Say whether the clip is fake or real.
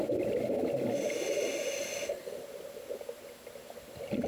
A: real